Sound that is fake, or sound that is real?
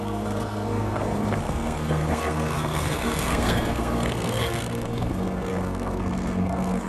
fake